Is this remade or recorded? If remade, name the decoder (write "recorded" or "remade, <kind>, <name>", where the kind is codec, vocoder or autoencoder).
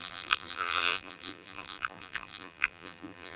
remade, vocoder, BigVGAN v2